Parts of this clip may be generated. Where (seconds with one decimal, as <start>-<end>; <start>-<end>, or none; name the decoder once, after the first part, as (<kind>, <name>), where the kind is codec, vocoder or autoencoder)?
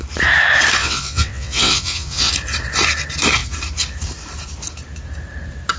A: 0.8-2.3 (vocoder, WaveNeXt)